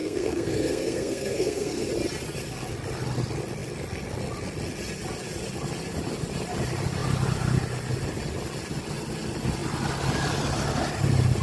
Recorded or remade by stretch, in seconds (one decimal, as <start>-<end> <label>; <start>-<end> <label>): 0.0-1.9 remade; 1.9-11.4 recorded